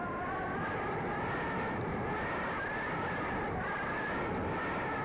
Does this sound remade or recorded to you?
recorded